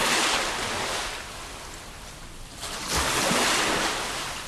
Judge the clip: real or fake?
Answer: real